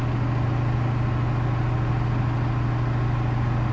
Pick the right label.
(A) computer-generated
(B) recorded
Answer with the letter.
B